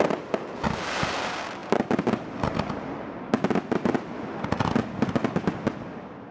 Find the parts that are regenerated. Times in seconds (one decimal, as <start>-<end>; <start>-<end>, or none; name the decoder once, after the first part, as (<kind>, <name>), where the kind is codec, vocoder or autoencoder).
none